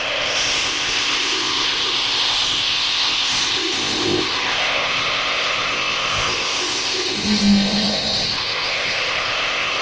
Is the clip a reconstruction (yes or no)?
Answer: yes